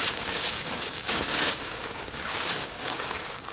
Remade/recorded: remade